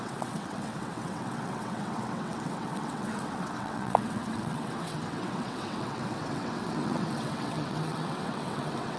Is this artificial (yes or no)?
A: yes